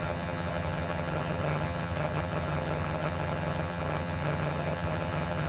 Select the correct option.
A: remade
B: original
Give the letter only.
A